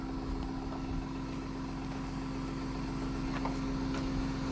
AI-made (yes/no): no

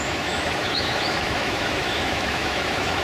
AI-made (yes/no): yes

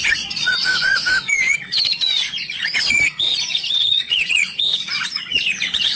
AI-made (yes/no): yes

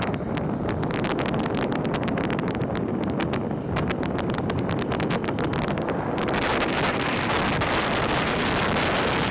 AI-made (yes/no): no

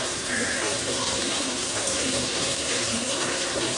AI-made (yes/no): yes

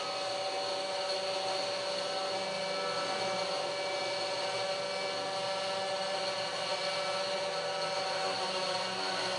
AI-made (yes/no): no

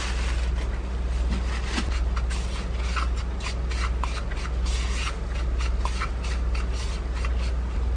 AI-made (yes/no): no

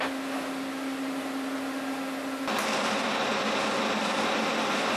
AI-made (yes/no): no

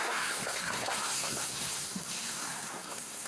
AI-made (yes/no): yes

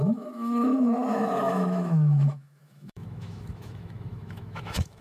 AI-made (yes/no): yes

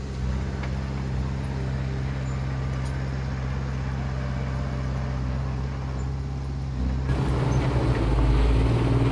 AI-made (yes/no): no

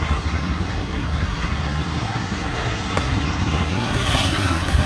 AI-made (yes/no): yes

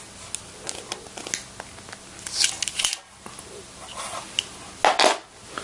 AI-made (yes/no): no